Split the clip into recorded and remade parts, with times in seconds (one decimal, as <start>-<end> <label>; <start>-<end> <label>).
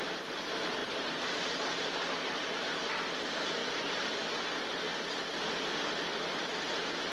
0.0-3.6 remade; 3.6-7.1 recorded